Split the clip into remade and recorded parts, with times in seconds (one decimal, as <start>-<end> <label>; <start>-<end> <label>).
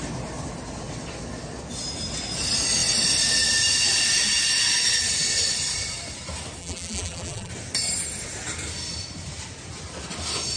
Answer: 0.0-6.6 recorded; 6.6-7.5 remade; 7.5-10.6 recorded